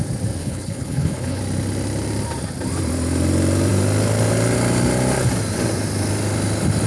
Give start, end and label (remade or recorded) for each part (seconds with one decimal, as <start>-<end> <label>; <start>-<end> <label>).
0.0-0.4 recorded; 0.4-1.4 remade; 1.4-6.9 recorded